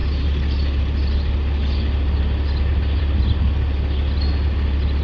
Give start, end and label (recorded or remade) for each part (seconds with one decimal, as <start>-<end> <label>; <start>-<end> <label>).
0.0-5.0 recorded